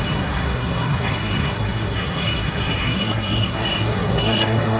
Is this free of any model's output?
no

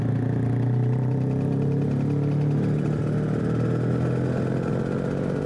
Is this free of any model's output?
yes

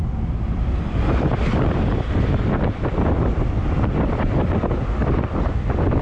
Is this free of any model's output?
no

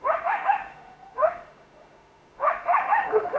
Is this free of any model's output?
no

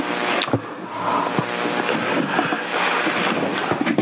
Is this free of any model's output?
yes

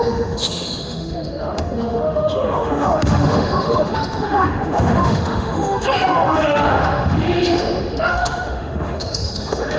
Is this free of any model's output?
no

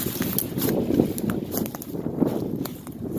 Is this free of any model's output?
yes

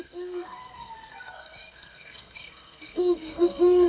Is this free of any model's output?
no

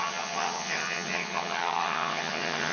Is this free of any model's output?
no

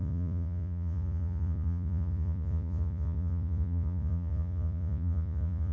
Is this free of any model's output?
no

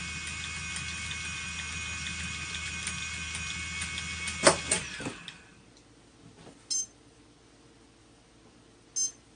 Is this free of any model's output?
yes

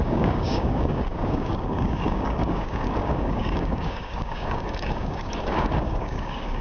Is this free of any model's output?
no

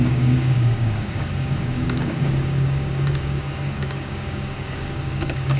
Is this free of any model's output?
no